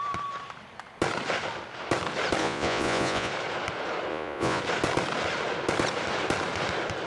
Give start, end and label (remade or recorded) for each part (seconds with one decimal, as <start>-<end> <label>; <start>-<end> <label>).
0.0-2.4 recorded; 2.4-3.3 remade; 3.3-4.1 recorded; 4.1-4.6 remade; 4.6-7.1 recorded